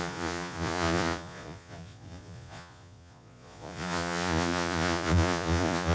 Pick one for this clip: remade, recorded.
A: remade